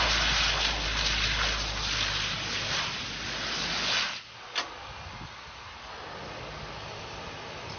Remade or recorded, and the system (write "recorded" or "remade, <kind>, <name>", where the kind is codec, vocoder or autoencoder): recorded